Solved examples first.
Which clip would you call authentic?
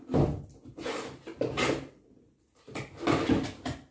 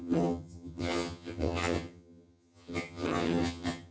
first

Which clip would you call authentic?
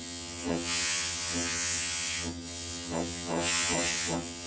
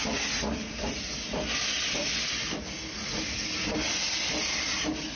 second